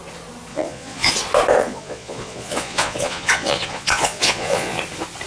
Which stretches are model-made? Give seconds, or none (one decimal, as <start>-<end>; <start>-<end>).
0.5-1.1; 1.6-4.8